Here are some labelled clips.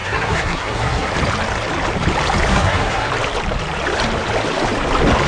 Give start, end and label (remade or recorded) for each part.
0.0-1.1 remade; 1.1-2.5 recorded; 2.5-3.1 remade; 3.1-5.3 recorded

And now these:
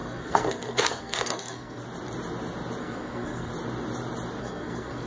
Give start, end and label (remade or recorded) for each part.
0.0-1.8 remade; 1.8-2.8 recorded; 2.8-3.5 remade; 3.5-4.4 recorded; 4.4-5.1 remade

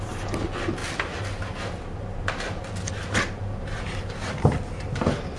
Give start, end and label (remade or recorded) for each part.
0.0-5.4 recorded

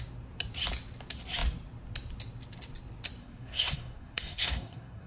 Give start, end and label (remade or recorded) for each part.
0.0-3.2 recorded; 3.2-5.1 remade

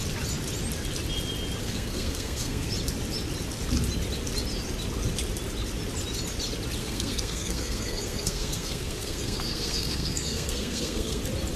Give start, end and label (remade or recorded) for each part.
0.0-1.6 recorded; 1.6-2.7 remade; 2.7-6.8 recorded; 6.8-11.2 remade; 11.2-11.6 recorded

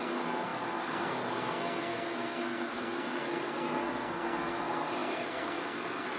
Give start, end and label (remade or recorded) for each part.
0.0-6.2 remade